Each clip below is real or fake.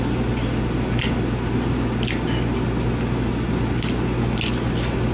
real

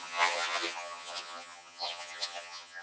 fake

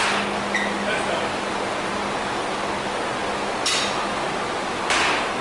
real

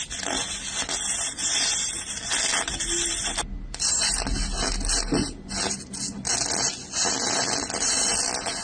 real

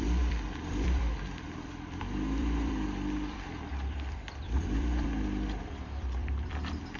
fake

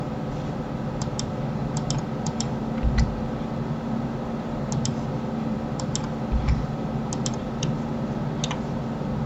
real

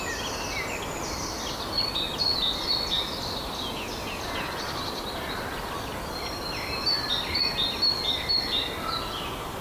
real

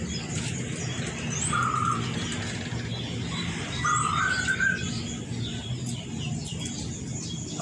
real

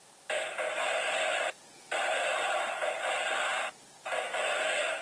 real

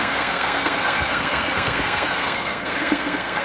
fake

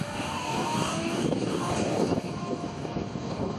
fake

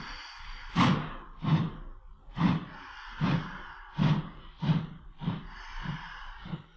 fake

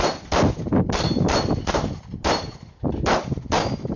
real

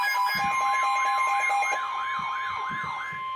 real